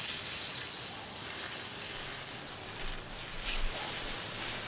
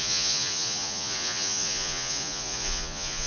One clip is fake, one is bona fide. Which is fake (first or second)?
second